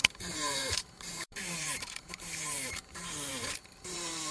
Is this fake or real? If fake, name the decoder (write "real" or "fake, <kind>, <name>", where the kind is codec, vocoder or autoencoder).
fake, vocoder, BigVGAN v2